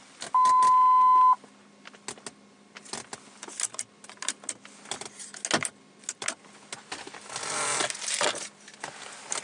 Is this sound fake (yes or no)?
no